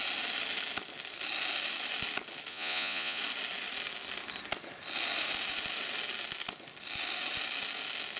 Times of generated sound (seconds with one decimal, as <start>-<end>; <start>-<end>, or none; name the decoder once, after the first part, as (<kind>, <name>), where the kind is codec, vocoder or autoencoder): 2.5-3.2 (vocoder, Vocos)